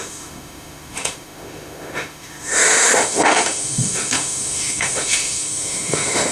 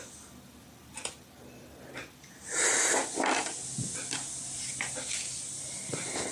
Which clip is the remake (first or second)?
first